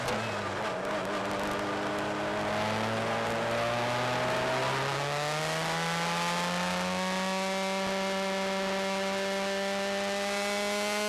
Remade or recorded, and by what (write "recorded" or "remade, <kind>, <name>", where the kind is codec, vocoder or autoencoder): recorded